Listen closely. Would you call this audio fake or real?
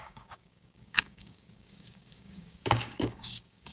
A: fake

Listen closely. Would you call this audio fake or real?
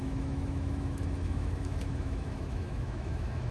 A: fake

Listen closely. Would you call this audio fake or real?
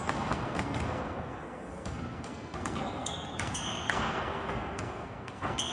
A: fake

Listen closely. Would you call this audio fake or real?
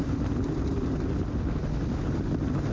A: real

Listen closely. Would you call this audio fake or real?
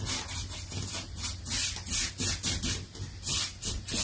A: real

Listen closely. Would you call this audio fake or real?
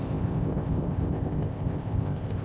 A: fake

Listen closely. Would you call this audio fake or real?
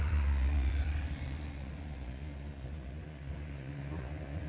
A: fake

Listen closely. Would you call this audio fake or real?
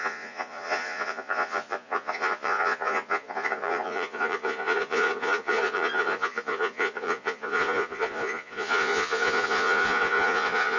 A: fake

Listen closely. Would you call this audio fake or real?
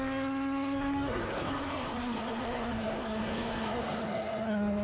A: fake